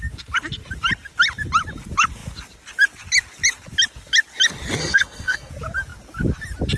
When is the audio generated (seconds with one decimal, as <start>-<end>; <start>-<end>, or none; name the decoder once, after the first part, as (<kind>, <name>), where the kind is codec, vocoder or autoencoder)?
4.8-5.5 (codec, SNAC)